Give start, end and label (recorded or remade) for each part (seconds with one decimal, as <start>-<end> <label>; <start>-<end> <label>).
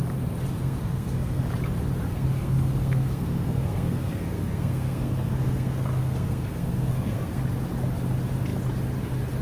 0.0-0.6 recorded; 0.6-1.4 remade; 1.4-2.1 recorded; 2.1-7.4 remade; 7.4-9.4 recorded